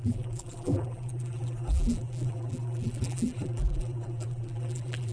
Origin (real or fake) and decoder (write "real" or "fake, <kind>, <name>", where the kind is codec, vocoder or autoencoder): fake, vocoder, BigVGAN v2